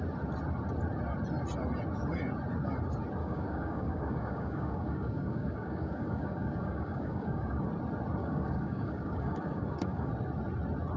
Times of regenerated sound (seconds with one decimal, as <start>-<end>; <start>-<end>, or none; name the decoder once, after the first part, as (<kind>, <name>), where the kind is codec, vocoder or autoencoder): 3.2-7.7 (codec, DAC); 8.2-10.1